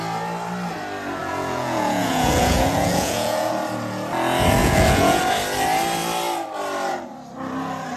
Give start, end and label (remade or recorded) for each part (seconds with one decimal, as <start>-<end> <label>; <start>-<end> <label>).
0.0-1.2 recorded; 1.2-3.5 remade; 3.5-4.6 recorded; 4.6-5.2 remade; 5.2-8.0 recorded